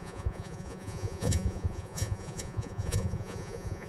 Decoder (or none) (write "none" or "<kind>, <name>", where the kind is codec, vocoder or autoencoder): vocoder, Vocos